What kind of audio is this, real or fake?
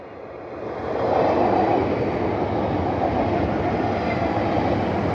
real